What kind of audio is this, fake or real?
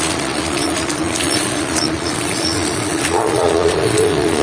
fake